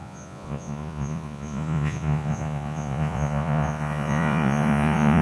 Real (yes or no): no